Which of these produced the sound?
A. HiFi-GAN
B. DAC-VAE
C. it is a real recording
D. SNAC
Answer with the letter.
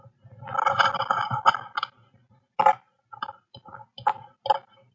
C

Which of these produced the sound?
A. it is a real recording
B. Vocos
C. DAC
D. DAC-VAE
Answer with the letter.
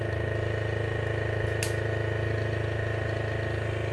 A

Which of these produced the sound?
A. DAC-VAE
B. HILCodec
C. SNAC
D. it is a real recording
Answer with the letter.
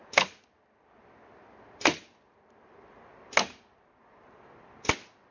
D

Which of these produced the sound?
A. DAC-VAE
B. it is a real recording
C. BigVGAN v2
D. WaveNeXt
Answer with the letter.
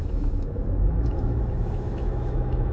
A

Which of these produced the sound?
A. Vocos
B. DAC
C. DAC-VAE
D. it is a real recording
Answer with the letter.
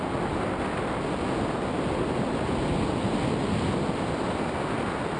D